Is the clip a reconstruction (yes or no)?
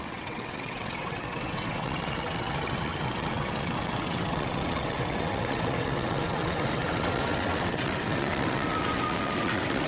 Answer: yes